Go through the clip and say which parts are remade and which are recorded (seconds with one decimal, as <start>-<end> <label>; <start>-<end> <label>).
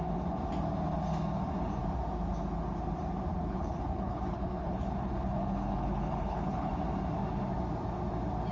0.0-3.3 recorded; 3.3-6.7 remade; 6.7-8.5 recorded